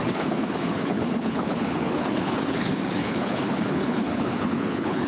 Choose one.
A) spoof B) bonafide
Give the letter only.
A